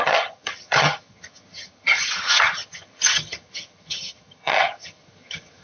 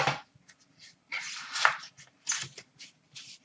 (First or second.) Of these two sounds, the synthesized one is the first